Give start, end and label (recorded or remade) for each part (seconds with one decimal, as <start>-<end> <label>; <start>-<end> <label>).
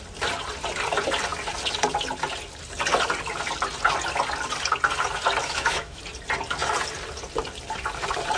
0.0-5.4 recorded; 5.4-6.0 remade; 6.0-8.4 recorded